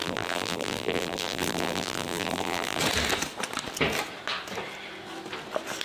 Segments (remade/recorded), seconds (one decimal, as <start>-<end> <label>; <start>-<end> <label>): 0.0-2.8 remade; 2.8-5.8 recorded